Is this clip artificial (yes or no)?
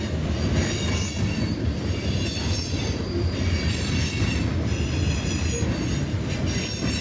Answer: no